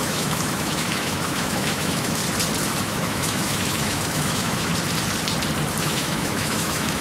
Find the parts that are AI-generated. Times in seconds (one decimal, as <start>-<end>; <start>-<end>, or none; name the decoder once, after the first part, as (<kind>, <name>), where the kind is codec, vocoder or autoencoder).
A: 0.0-2.2 (autoencoder, DAC-VAE); 2.8-4.7; 5.8-7.0